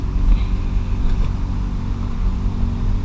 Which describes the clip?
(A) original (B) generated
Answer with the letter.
A